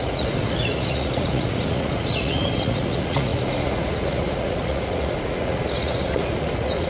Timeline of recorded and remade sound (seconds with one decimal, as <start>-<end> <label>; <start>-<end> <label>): 0.0-6.9 remade